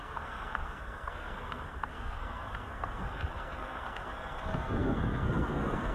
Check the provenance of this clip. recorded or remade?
remade